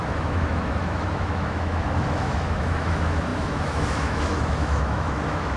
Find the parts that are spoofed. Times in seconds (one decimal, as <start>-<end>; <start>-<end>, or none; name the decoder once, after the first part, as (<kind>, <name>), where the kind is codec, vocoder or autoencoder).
0.0-5.6 (autoencoder, DAC-VAE)